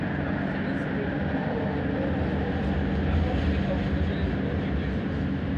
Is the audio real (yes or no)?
yes